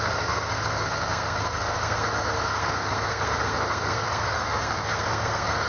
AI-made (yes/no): yes